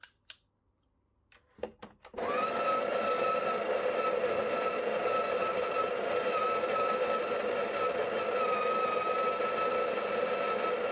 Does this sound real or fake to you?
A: real